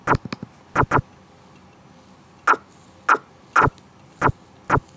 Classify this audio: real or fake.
real